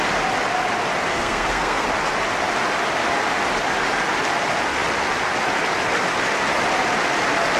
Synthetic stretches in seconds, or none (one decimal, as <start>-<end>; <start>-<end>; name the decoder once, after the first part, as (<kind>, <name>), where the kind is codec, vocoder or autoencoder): 1.1-1.9 (codec, SNAC)